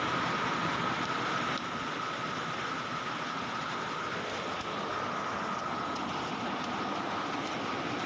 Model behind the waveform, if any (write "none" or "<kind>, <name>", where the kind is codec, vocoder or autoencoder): none